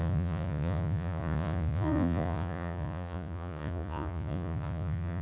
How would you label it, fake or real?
fake